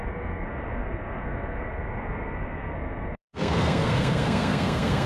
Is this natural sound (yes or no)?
no